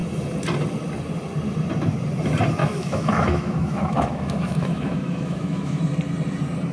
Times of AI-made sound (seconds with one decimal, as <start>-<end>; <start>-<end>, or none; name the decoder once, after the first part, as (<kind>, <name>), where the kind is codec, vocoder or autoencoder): 2.6-5.8 (autoencoder, DAC-VAE)